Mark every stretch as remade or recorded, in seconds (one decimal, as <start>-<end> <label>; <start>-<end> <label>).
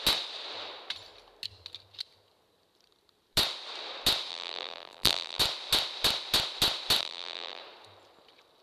0.0-4.3 recorded; 4.3-5.4 remade; 5.4-7.0 recorded; 7.0-7.6 remade; 7.6-8.6 recorded